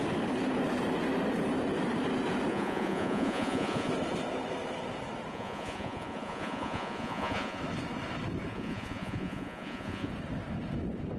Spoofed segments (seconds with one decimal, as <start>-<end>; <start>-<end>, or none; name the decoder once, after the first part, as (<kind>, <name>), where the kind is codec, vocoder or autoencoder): 2.5-3.9 (vocoder, Vocos); 5.3-7.6; 8.5-10.1